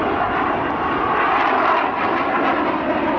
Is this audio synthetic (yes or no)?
no